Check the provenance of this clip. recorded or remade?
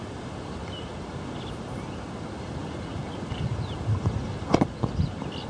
recorded